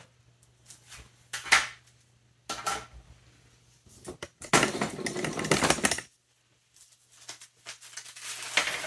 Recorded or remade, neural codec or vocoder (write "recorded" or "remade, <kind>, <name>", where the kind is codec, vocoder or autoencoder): recorded